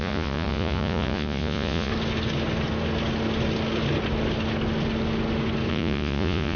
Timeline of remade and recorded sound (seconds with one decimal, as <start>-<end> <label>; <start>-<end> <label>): 0.0-1.9 remade; 1.9-5.7 recorded; 5.7-6.6 remade